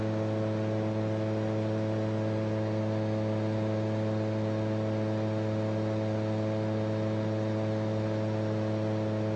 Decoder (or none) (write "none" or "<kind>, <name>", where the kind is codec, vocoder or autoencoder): none